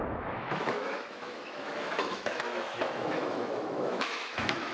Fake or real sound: fake